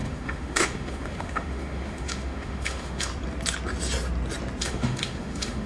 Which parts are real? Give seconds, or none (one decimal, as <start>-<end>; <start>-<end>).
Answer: 3.1-4.6